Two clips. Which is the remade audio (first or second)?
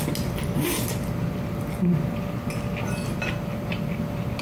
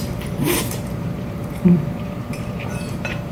second